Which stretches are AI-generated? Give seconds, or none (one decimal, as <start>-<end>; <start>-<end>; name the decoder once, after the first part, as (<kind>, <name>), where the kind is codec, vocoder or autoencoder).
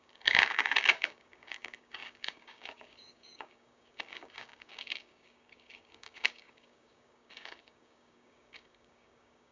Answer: 0.0-9.5 (codec, DAC)